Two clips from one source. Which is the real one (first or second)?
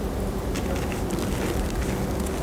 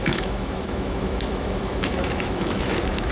first